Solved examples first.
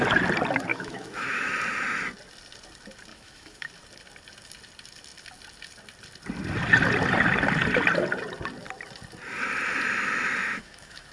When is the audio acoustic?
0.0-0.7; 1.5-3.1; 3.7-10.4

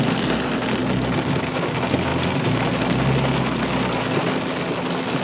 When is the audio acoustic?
0.0-5.2

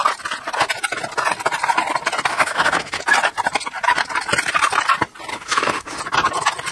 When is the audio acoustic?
0.0-2.3; 3.0-5.3; 6.0-6.7

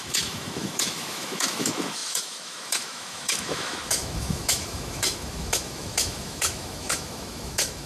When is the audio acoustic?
none

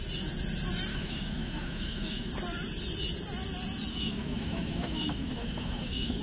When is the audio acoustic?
0.0-0.9; 2.3-3.9

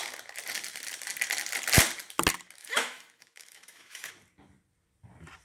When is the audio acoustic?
0.0-2.6; 4.1-5.4

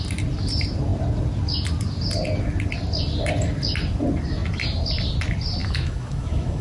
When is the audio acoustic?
0.0-5.6

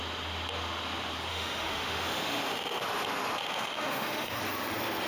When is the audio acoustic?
0.0-1.3; 2.8-3.4; 4.4-5.1